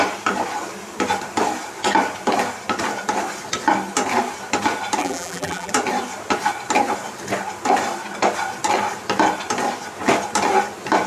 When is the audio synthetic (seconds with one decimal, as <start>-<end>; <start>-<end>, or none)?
5.0-5.7